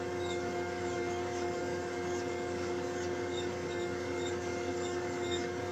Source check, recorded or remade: remade